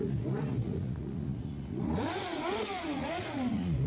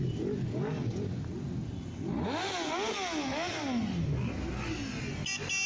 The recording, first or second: second